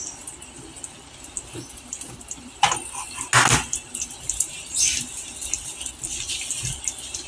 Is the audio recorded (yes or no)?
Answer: yes